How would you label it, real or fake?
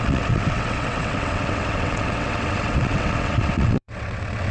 fake